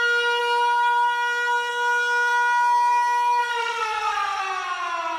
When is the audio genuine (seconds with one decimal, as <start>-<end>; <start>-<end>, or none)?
0.0-3.4; 4.5-5.2